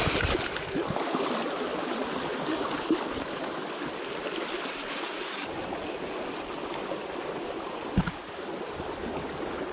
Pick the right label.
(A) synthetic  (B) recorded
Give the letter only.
B